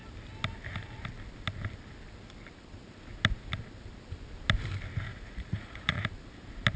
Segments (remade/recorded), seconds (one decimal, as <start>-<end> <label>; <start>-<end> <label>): 0.0-5.1 recorded; 5.1-6.0 remade; 6.0-6.8 recorded

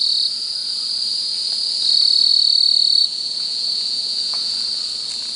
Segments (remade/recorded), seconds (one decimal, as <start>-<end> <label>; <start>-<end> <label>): 0.0-3.0 recorded; 3.0-4.5 remade; 4.5-5.4 recorded